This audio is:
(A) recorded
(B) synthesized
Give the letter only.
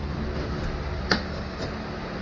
A